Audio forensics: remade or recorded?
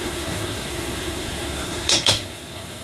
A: remade